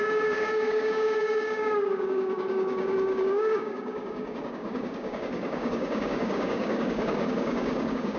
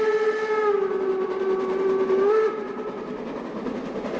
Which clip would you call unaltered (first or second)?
second